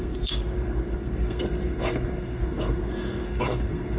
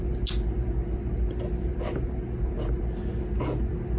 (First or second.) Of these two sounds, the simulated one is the first